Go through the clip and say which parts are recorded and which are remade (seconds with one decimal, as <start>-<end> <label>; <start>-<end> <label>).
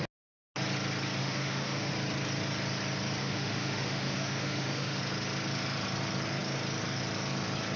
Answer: 0.0-1.2 recorded; 1.2-1.9 remade; 1.9-3.2 recorded; 3.2-5.0 remade; 5.0-7.8 recorded